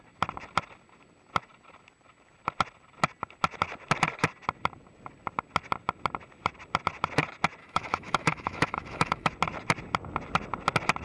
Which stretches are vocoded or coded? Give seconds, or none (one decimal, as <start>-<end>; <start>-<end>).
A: 7.6-9.3